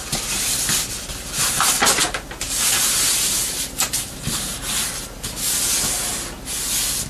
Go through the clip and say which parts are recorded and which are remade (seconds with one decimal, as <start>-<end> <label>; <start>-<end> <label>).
0.0-7.1 recorded